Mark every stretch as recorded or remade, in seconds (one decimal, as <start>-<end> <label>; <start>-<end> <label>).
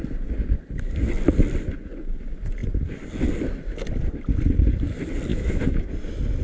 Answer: 0.0-5.3 recorded; 5.3-5.9 remade; 5.9-6.4 recorded